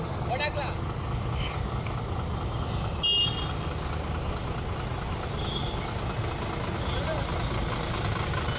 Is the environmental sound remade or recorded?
recorded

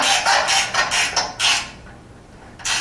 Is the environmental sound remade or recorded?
recorded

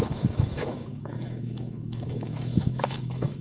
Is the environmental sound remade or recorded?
remade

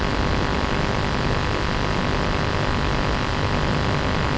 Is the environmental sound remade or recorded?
recorded